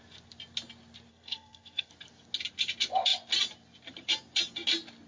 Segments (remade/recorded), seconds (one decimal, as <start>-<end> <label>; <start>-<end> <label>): 0.0-1.1 recorded; 1.1-1.9 remade; 1.9-5.1 recorded